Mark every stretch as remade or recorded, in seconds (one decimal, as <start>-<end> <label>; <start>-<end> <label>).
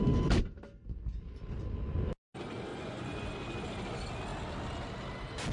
0.0-2.7 recorded; 2.7-3.3 remade; 3.3-5.5 recorded